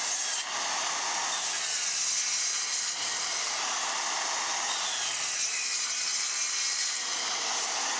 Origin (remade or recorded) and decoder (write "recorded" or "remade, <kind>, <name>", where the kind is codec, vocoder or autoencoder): recorded